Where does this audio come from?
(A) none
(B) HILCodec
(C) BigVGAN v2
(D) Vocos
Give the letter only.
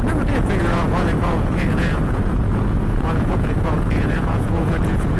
D